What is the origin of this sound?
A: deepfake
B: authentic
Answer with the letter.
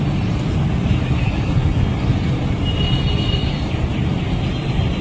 B